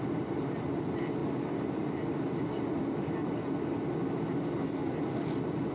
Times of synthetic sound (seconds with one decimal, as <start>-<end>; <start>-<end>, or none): none